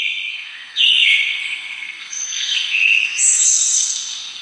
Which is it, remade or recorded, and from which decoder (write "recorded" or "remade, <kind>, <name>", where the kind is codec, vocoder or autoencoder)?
remade, codec, SNAC